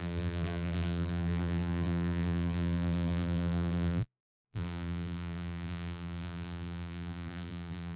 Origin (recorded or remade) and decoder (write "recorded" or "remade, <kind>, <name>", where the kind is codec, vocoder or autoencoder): remade, vocoder, BigVGAN v2